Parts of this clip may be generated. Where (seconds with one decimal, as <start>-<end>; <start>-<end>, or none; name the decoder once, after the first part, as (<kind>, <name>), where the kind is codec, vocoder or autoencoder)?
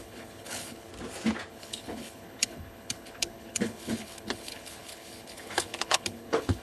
0.0-0.9 (codec, HILCodec); 1.5-6.6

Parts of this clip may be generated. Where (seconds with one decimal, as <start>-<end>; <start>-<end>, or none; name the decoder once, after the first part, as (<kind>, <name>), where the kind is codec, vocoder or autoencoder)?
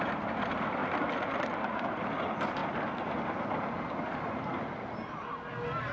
0.8-2.1 (vocoder, BigVGAN v2)